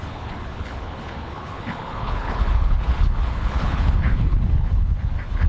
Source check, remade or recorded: remade